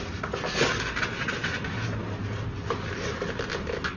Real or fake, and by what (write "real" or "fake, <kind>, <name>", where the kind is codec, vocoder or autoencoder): real